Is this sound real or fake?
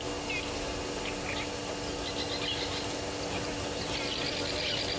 real